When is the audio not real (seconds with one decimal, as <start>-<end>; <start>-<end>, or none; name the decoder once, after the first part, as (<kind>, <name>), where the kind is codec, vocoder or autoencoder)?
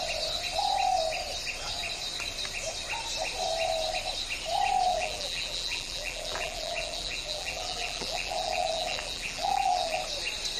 4.9-10.0 (vocoder, BigVGAN v2)